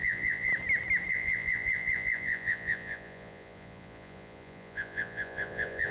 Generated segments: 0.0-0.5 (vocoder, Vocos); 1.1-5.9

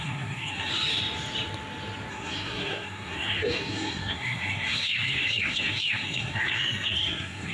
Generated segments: 0.0-0.7 (codec, SNAC); 2.1-7.5

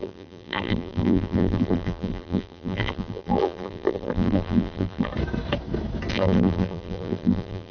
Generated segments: 0.0-5.1 (vocoder, BigVGAN v2); 6.1-7.7

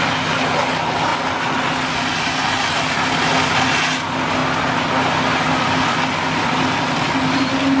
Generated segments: none

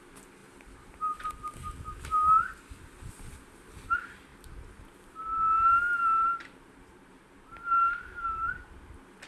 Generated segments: 4.3-5.2 (vocoder, BigVGAN v2); 6.3-8.5